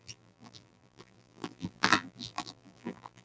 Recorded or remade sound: remade